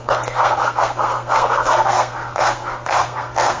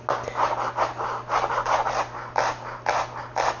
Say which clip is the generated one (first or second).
first